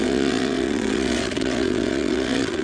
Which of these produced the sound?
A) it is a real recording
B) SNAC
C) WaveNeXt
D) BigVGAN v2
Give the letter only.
C